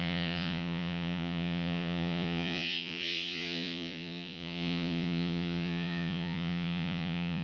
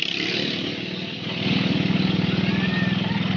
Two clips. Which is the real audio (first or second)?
second